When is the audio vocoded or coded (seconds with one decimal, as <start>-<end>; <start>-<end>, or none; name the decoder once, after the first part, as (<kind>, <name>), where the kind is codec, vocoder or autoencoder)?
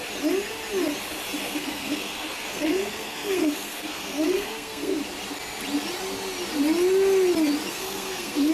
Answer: 1.4-5.0 (codec, SNAC); 7.7-8.5